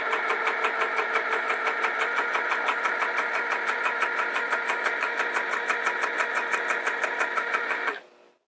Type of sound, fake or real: real